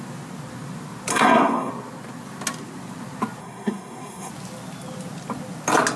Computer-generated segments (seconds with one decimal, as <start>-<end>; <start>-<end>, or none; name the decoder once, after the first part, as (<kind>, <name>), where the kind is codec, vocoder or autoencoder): 1.1-1.7 (codec, SNAC); 3.4-4.3